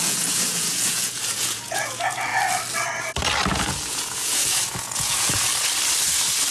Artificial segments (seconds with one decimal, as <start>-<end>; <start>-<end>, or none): 0.0-2.3; 3.5-5.5